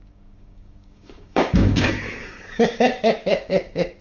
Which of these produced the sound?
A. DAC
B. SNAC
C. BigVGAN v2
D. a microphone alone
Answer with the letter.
A